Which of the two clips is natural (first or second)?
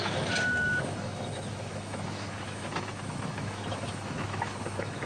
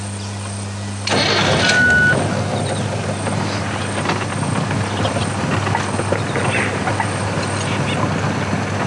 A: second